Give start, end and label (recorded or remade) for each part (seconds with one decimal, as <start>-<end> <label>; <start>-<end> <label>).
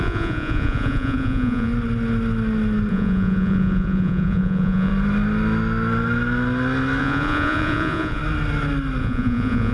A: 0.0-1.7 remade; 1.7-2.9 recorded; 2.9-4.9 remade; 4.9-7.0 recorded; 7.0-8.2 remade; 8.2-9.0 recorded; 9.0-9.7 remade